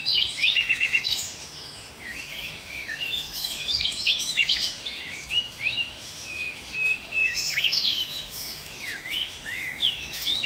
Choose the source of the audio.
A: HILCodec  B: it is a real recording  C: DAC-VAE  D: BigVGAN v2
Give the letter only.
C